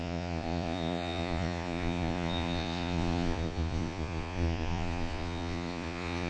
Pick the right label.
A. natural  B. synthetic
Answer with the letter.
B